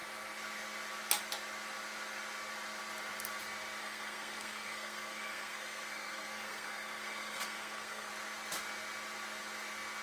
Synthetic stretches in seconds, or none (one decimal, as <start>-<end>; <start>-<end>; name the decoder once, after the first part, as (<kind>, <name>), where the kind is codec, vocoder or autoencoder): 3.8-8.1 (codec, SNAC)